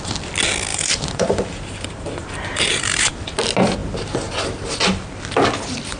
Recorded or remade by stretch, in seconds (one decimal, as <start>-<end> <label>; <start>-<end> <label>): 0.0-0.7 recorded; 0.7-3.1 remade; 3.1-6.0 recorded

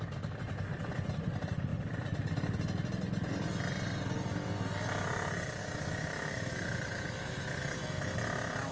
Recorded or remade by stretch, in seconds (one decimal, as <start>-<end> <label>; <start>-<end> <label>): 0.0-5.6 recorded; 5.6-7.6 remade; 7.6-8.7 recorded

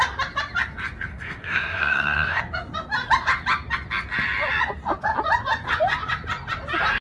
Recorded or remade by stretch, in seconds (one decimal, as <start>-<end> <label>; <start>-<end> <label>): 0.0-1.1 recorded; 1.1-2.4 remade; 2.4-7.0 recorded

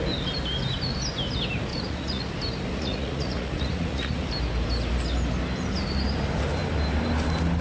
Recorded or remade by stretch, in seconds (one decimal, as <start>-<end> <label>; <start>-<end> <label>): 0.0-1.7 recorded; 1.7-2.3 remade; 2.3-2.7 recorded; 2.7-4.3 remade; 4.3-7.6 recorded

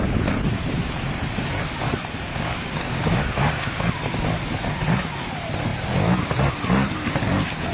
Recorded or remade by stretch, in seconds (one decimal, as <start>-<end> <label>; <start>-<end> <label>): 0.0-2.3 recorded; 2.3-3.9 remade; 3.9-7.7 recorded

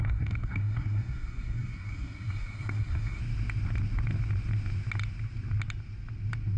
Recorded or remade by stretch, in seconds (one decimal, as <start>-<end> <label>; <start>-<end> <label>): 0.0-3.2 remade; 3.2-6.6 recorded

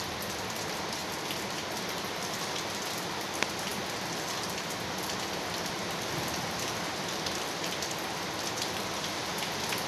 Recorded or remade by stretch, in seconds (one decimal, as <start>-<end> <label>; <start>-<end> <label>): 0.0-3.7 recorded; 3.7-8.6 remade; 8.6-9.9 recorded

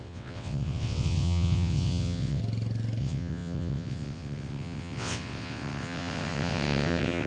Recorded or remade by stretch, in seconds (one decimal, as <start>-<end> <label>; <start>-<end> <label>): 0.0-2.4 remade; 2.4-3.0 recorded; 3.0-7.3 remade